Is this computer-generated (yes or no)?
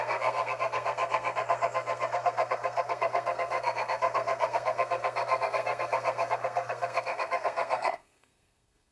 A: yes